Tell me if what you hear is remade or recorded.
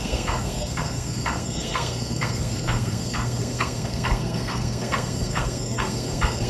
remade